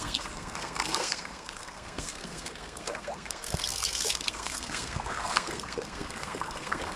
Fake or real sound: fake